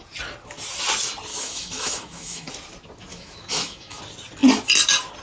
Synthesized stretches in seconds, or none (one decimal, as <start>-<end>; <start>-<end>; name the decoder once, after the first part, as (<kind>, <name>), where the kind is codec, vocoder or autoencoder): 1.3-2.5 (autoencoder, DAC-VAE); 3.1-4.0